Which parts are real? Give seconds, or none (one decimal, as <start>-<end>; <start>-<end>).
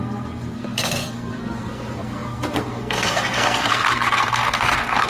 none